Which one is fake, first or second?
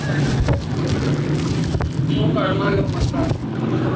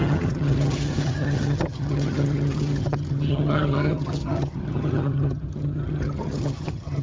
second